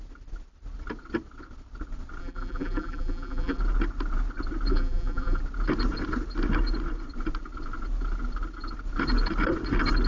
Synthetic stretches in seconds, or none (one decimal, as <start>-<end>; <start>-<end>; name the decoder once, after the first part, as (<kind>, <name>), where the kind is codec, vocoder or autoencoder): 2.2-3.6 (vocoder, BigVGAN v2); 4.7-5.4